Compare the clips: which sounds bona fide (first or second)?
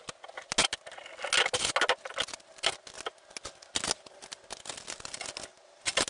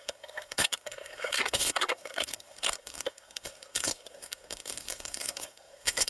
first